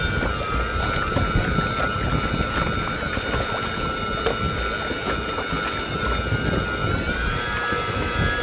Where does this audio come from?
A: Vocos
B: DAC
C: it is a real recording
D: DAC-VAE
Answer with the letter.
C